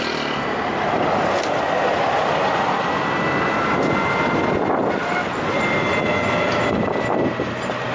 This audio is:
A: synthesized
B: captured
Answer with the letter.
B